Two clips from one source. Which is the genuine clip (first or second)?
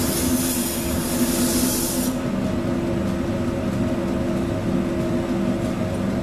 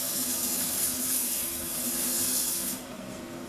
first